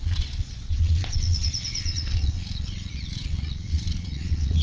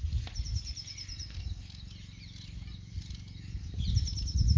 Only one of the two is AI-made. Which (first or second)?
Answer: first